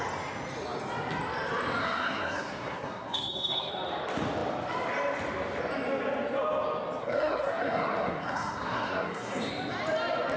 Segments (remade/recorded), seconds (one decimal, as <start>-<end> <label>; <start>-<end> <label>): 0.0-1.8 recorded; 1.8-3.7 remade; 3.7-7.0 recorded; 7.0-9.5 remade; 9.5-10.4 recorded